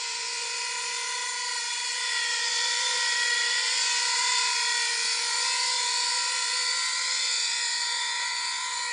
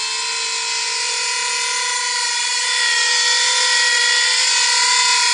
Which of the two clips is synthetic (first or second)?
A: first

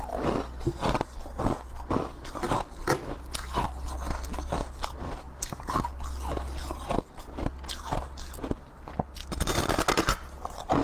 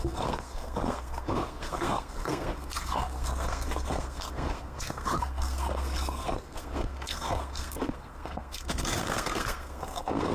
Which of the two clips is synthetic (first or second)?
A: second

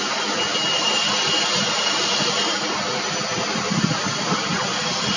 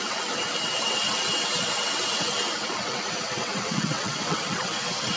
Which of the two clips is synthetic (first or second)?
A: second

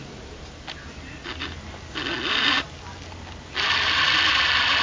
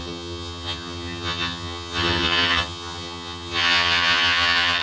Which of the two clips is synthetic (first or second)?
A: second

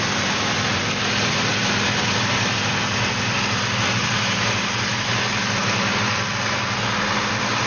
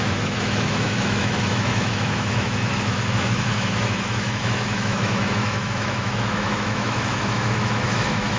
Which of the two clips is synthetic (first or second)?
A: second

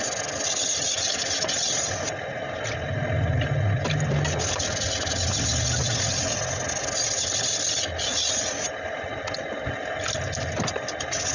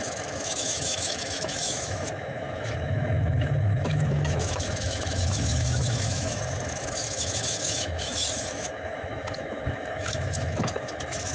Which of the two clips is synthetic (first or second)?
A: second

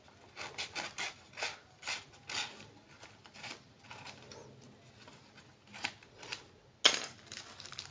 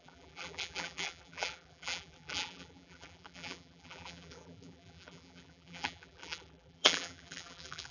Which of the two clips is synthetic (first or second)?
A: second